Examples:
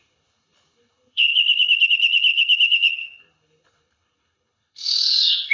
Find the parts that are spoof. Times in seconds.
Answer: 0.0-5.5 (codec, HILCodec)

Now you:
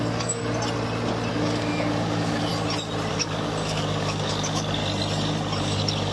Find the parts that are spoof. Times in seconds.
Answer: 0.0-0.4 (codec, DAC); 1.3-2.5; 3.1-4.8; 5.6-6.1